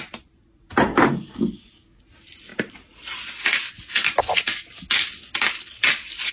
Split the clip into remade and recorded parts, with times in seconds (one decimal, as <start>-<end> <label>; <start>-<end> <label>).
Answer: 0.0-0.9 recorded; 0.9-2.0 remade; 2.0-6.3 recorded